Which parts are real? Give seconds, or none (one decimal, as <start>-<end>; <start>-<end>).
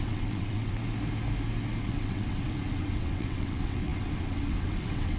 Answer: 0.8-1.8